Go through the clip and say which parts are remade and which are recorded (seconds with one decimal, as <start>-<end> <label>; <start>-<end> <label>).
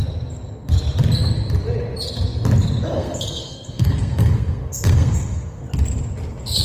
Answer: 0.0-3.0 recorded; 3.0-5.6 remade; 5.6-6.6 recorded